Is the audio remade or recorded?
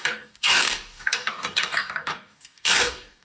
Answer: remade